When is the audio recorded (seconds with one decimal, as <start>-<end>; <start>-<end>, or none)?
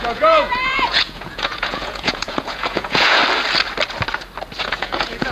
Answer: 3.2-4.6